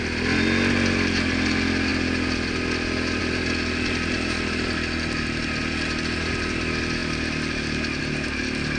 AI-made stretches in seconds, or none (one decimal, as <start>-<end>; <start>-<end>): none